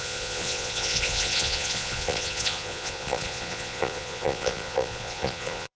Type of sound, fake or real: fake